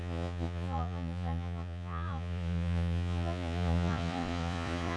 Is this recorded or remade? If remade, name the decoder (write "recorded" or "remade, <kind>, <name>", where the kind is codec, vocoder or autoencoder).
remade, vocoder, Vocos